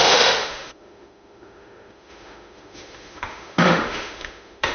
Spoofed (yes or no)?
yes